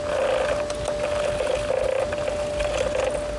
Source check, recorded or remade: recorded